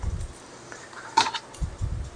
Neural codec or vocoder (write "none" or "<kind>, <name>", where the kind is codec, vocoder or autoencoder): none